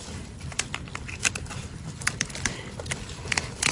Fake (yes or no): yes